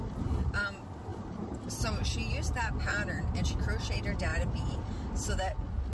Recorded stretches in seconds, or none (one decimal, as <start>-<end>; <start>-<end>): 0.0-1.1; 1.9-4.3; 4.9-5.9